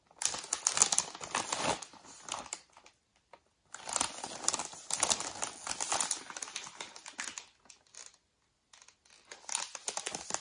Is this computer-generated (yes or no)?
no